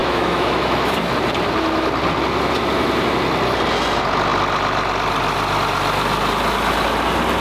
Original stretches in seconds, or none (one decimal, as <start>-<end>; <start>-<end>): 1.1-7.4